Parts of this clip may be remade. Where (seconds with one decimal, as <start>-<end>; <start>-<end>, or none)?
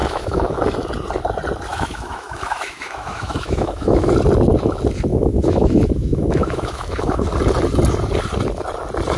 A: 0.0-0.6; 1.7-4.1; 5.1-7.2